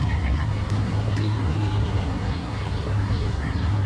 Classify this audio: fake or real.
fake